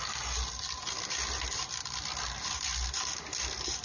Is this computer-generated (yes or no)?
no